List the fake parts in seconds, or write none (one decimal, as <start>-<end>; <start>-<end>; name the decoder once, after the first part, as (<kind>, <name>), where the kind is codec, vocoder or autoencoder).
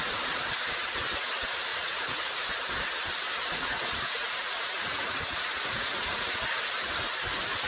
1.7-2.3 (vocoder, Vocos); 3.5-6.6